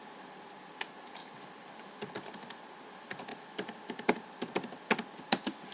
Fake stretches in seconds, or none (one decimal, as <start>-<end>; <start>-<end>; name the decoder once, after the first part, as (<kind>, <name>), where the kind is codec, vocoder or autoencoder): none